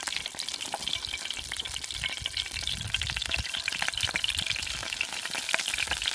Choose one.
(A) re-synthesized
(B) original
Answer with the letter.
B